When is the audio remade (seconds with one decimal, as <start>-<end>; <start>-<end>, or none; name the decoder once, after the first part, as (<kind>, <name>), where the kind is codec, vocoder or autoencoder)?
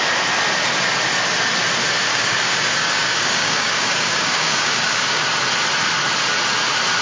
2.1-5.3 (codec, DAC)